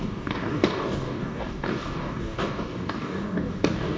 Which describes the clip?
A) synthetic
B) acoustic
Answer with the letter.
A